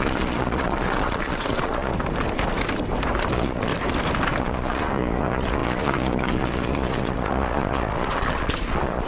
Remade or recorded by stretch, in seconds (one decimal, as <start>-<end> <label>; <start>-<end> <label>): 0.0-1.9 remade; 1.9-3.3 recorded; 3.3-3.7 remade; 3.7-4.4 recorded; 4.4-9.1 remade